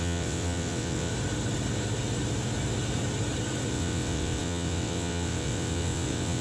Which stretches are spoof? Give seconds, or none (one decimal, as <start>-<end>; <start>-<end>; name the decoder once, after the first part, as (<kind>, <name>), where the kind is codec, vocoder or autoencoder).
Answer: 0.0-1.1 (vocoder, WaveNeXt); 3.7-6.4